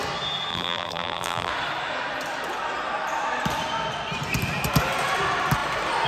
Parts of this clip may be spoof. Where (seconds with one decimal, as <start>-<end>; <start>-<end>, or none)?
0.5-1.5